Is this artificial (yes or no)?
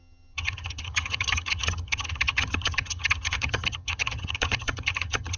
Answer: yes